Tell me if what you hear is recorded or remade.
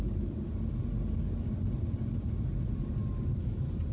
recorded